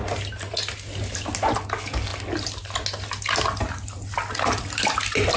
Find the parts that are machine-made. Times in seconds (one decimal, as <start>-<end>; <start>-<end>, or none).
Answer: none